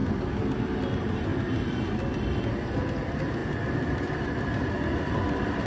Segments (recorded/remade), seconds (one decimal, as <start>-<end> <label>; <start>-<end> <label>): 0.0-0.9 recorded; 0.9-1.3 remade; 1.3-1.9 recorded; 1.9-5.7 remade